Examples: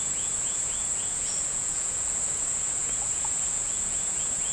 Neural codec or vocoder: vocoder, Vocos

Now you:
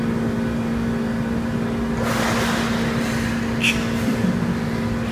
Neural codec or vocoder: none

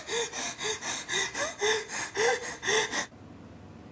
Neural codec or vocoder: none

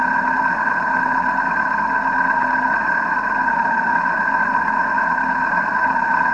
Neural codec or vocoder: none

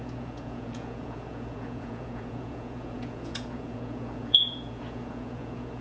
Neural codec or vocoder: vocoder, Vocos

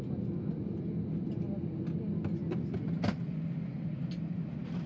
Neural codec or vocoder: none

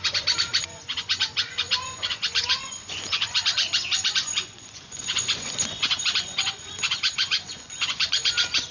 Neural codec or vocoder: vocoder, Vocos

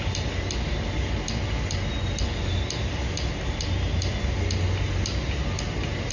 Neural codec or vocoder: none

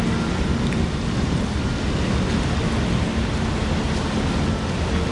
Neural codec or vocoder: none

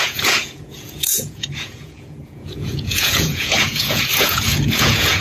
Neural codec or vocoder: vocoder, Vocos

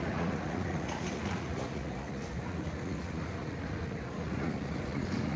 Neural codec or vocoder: vocoder, Vocos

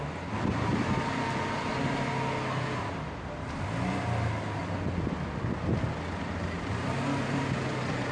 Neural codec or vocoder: none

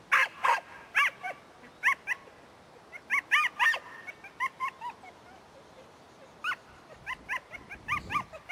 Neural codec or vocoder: none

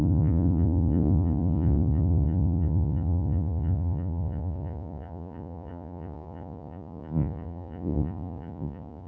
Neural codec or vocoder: vocoder, Vocos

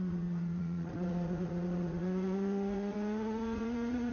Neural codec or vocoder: vocoder, Vocos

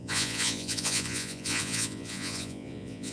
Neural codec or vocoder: vocoder, Vocos